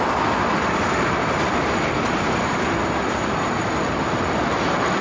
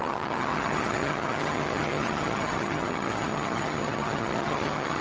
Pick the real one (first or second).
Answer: first